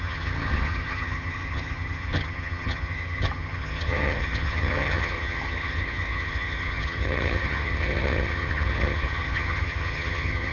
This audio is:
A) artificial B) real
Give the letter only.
A